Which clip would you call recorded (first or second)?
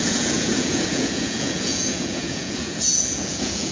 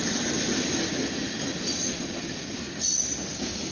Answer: second